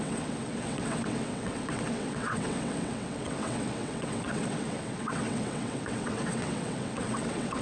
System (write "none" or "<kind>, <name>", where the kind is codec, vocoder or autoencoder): vocoder, WaveNeXt